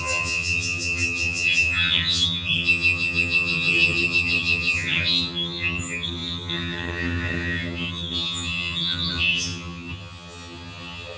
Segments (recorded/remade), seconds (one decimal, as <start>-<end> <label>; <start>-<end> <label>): 0.0-11.2 remade